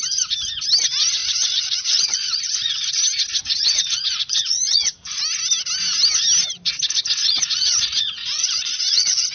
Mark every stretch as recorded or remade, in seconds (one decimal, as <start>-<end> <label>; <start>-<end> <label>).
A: 0.0-1.2 recorded; 1.2-2.9 remade; 2.9-3.3 recorded; 3.3-5.2 remade; 5.2-7.2 recorded; 7.2-9.3 remade